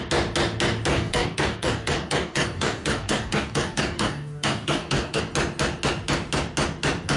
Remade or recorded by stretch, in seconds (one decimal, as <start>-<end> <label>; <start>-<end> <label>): 0.0-0.9 recorded; 0.9-5.2 remade; 5.2-7.2 recorded